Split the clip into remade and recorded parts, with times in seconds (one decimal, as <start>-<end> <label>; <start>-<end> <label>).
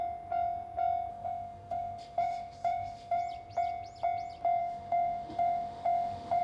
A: 0.0-1.1 recorded; 1.1-3.2 remade; 3.2-4.6 recorded; 4.6-6.4 remade